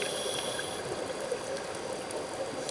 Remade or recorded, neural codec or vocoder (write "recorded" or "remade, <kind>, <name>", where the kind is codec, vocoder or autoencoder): recorded